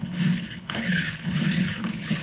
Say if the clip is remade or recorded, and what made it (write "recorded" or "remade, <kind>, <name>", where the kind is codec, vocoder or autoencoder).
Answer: remade, codec, HILCodec